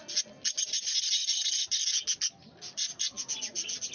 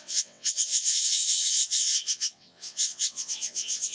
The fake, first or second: second